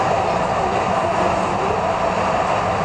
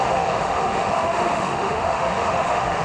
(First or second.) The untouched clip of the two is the first